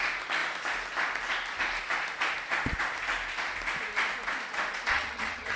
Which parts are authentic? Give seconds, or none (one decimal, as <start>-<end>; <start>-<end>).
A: 0.0-4.9